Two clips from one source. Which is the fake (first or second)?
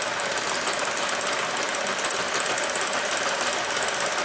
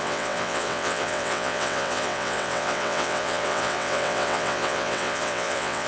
second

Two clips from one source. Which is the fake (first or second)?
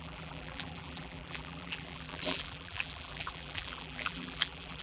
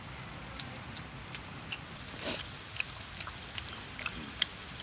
first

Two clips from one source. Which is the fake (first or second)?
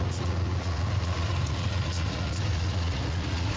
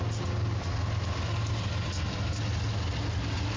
first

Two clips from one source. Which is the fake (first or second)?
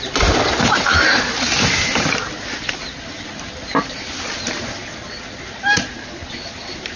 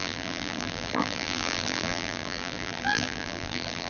second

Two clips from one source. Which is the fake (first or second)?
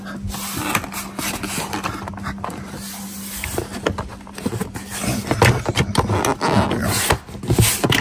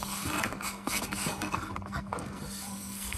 second